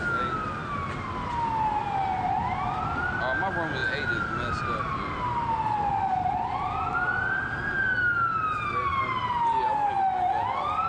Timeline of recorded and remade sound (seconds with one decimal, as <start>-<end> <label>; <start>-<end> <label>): 0.0-10.9 recorded